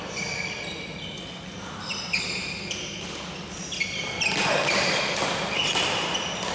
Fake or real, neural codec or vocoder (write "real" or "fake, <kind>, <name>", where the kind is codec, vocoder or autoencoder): real